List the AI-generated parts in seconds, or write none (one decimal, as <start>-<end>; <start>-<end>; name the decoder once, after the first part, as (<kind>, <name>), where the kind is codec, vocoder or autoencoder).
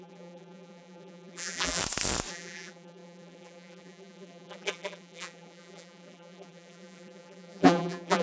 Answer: 0.0-1.8 (vocoder, BigVGAN v2); 2.3-8.2